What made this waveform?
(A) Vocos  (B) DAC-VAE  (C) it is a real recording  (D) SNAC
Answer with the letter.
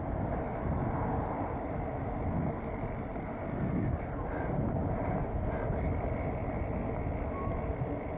C